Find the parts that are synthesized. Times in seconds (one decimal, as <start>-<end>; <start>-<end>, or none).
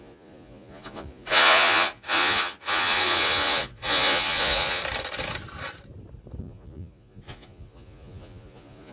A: 0.0-4.8; 6.4-8.9